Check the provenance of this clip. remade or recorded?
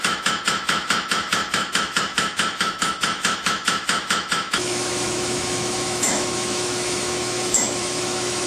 remade